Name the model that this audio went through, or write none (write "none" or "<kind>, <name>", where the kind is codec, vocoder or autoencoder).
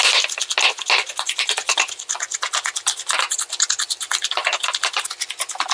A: none